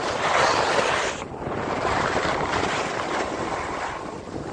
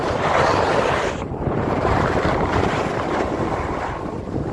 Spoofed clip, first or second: second